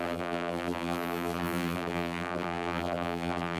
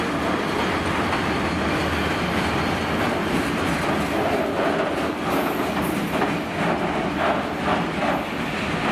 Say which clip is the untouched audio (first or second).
second